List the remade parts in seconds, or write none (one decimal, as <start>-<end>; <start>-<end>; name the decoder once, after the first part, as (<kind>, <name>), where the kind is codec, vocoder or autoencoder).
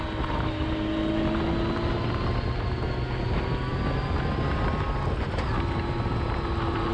none